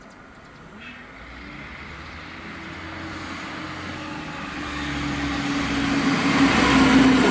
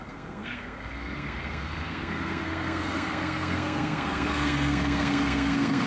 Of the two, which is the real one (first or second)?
first